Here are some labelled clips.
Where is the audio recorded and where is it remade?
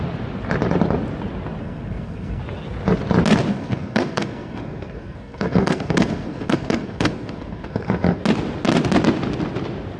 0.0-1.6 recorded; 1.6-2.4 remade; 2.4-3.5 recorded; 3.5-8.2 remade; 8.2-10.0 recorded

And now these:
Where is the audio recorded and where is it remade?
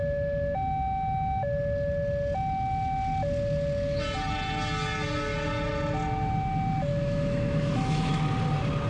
0.0-6.9 recorded; 6.9-8.2 remade; 8.2-8.9 recorded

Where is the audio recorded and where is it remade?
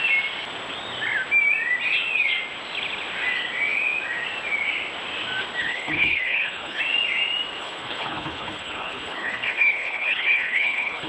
0.0-5.6 recorded; 5.6-6.8 remade; 6.8-7.6 recorded; 7.6-11.1 remade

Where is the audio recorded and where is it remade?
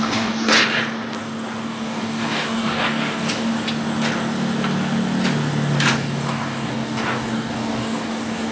0.0-0.5 remade; 0.5-1.7 recorded; 1.7-3.5 remade; 3.5-5.9 recorded; 5.9-8.5 remade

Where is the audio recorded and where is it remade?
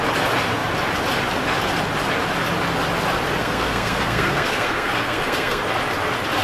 0.0-3.4 recorded; 3.4-5.6 remade; 5.6-6.4 recorded